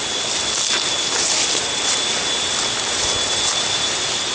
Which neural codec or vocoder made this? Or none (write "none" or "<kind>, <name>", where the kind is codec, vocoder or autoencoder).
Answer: none